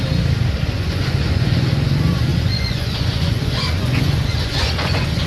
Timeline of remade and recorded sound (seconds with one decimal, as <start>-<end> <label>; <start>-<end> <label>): 0.0-0.6 recorded; 0.6-5.3 remade